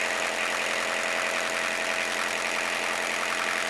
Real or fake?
real